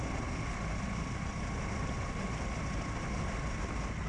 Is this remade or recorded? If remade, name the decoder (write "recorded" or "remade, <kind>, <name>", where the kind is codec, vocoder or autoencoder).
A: recorded